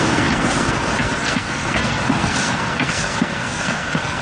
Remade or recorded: remade